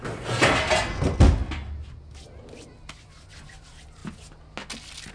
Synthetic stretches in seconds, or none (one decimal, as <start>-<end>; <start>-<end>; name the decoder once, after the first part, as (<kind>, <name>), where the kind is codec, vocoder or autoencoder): none